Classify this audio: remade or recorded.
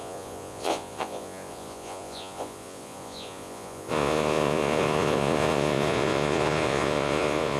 remade